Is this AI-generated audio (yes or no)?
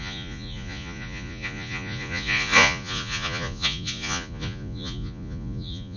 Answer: yes